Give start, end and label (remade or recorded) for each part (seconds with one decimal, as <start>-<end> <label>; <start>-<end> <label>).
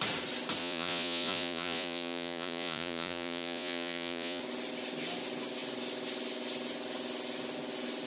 0.0-0.6 recorded; 0.6-4.4 remade; 4.4-8.1 recorded